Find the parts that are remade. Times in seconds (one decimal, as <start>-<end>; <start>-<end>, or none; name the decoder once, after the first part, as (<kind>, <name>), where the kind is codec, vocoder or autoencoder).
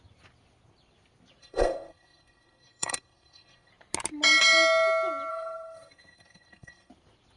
1.4-3.7 (codec, SNAC); 5.3-6.9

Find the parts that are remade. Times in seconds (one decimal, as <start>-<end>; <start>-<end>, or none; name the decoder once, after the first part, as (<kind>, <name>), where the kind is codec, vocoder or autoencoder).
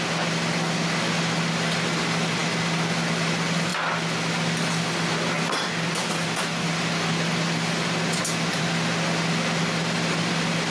none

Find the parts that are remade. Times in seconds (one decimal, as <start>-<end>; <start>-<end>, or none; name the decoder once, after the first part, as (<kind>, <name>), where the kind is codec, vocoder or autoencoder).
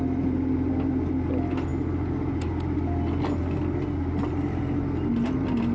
none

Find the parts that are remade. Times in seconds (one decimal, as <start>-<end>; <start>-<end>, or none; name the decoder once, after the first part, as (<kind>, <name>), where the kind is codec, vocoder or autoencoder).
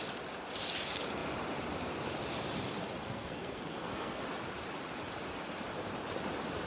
3.0-4.2 (codec, SNAC)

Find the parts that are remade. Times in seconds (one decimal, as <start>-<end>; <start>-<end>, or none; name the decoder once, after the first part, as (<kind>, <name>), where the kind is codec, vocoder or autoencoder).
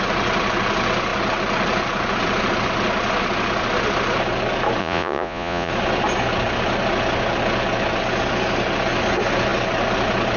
4.8-5.7 (vocoder, Vocos)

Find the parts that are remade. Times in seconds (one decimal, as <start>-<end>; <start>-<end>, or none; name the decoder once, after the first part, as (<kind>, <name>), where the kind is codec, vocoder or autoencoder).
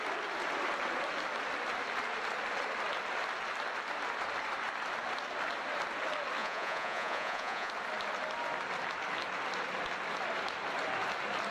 6.4-7.7 (vocoder, Vocos)